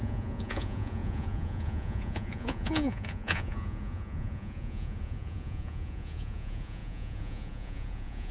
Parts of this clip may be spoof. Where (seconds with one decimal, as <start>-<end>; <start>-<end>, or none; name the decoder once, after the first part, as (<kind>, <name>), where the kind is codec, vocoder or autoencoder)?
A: 0.0-8.3 (vocoder, Vocos)